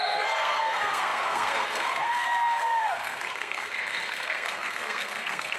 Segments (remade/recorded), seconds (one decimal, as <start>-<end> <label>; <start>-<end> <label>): 0.0-5.6 remade